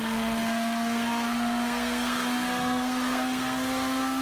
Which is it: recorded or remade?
remade